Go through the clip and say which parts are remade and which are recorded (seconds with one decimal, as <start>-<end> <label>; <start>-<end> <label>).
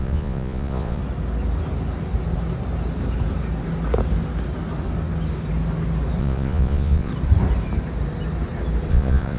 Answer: 0.0-1.0 remade; 1.0-6.2 recorded; 6.2-7.1 remade; 7.1-8.9 recorded; 8.9-9.4 remade